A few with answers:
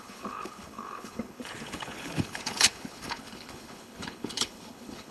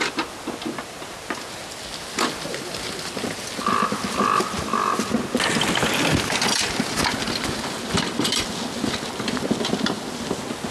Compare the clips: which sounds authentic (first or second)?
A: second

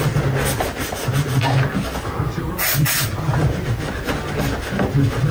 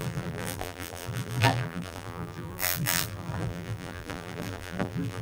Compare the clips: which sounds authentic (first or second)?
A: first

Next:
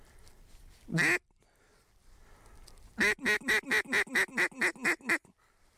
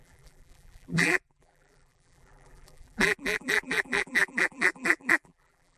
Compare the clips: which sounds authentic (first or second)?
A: first